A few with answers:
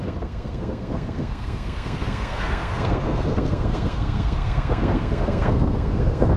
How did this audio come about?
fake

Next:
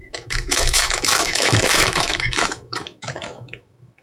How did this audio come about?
fake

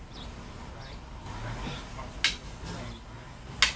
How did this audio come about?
real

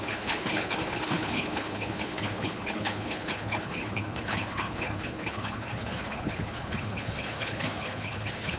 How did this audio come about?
fake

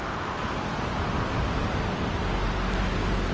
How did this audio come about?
real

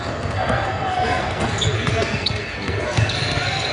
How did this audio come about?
fake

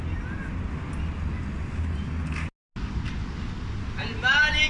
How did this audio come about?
real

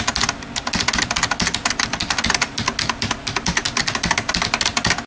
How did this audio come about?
real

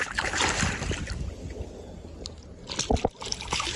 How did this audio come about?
real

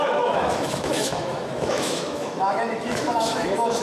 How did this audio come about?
fake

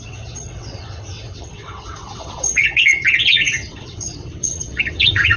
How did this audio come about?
fake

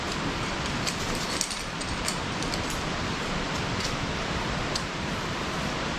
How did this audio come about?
real